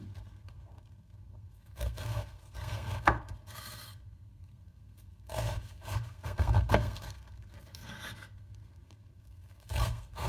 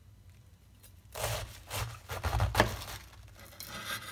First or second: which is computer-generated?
first